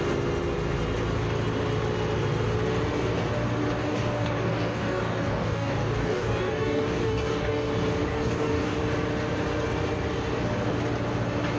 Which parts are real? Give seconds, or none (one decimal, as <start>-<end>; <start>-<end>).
0.0-3.8; 7.7-8.1; 8.8-11.6